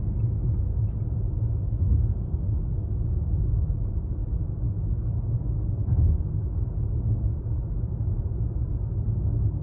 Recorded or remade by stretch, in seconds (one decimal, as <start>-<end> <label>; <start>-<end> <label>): 0.0-9.6 recorded